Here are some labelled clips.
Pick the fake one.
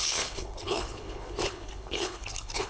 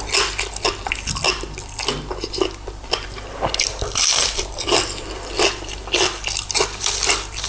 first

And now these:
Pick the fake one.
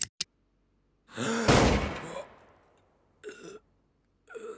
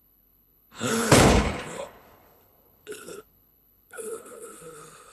second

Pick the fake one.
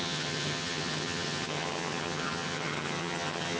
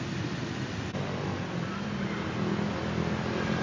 first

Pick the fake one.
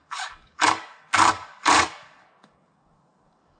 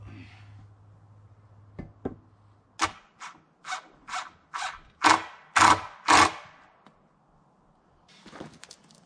first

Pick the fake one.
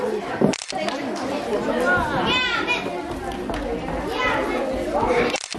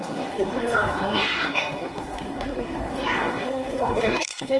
second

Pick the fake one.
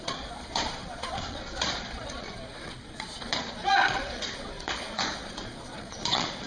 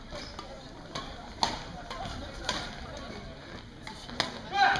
first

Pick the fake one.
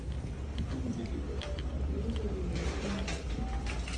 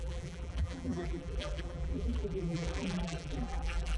second